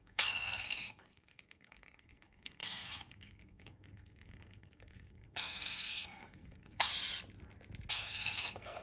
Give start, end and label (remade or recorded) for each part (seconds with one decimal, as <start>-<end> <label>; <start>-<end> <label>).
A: 0.0-6.9 remade; 6.9-7.9 recorded; 7.9-8.8 remade